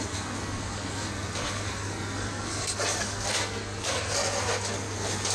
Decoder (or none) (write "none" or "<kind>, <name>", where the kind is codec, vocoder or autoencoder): codec, SNAC